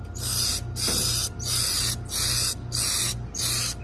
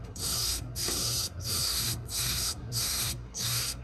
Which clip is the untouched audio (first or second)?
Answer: first